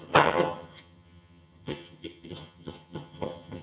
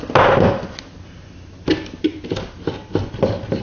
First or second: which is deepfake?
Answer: first